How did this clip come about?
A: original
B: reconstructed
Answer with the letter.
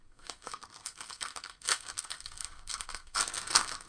B